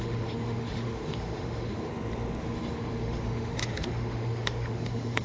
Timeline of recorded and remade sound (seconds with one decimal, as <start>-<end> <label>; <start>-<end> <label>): 0.0-1.9 remade; 1.9-2.4 recorded; 2.4-5.2 remade